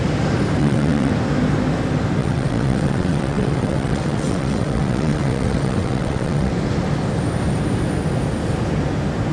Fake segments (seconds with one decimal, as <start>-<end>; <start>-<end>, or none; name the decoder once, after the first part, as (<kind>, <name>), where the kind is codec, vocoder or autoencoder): 0.6-1.1 (vocoder, WaveNeXt); 2.2-6.5